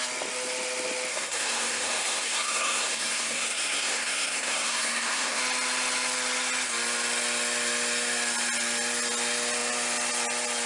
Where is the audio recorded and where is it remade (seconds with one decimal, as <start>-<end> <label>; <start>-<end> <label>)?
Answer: 0.0-1.1 recorded; 1.1-5.4 remade; 5.4-10.7 recorded